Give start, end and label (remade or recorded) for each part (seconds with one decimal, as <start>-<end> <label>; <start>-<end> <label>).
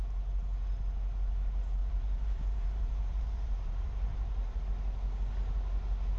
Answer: 0.0-1.8 recorded; 1.8-4.6 remade; 4.6-6.2 recorded